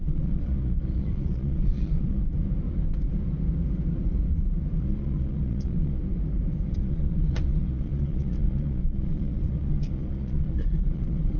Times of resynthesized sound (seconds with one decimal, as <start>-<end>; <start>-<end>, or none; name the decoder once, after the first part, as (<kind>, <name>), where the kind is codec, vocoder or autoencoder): 0.0-2.2 (vocoder, Vocos); 4.8-6.0; 6.7-11.4